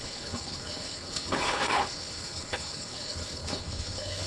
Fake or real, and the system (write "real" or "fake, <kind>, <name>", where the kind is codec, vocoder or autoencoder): fake, codec, HILCodec